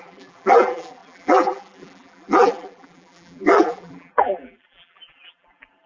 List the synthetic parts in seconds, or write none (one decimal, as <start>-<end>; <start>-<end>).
0.0-5.9